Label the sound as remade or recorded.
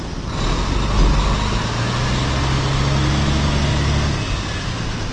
recorded